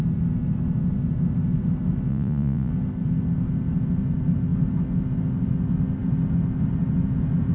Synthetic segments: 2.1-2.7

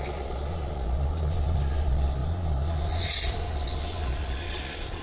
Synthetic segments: 0.0-5.0

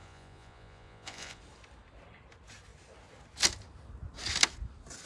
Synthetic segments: 0.0-1.4

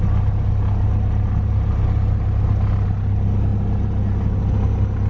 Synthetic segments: none

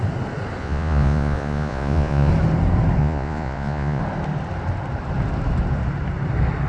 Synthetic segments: 0.6-2.3; 3.0-4.0